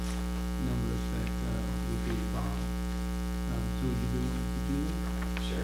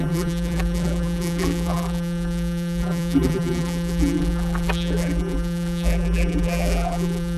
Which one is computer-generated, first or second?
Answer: second